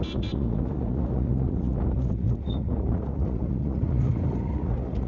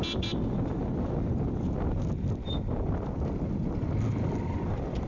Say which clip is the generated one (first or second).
first